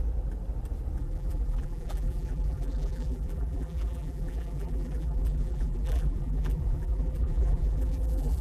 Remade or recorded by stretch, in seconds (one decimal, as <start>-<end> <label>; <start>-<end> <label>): 0.0-1.0 recorded; 1.0-8.4 remade